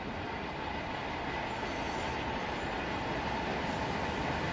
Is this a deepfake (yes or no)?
no